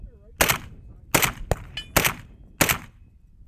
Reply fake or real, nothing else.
real